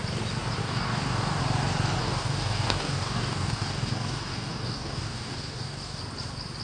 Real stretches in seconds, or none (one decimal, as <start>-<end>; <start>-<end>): 0.0-0.6; 1.4-2.0; 6.0-6.6